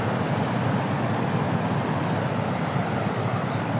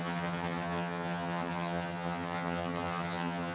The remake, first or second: second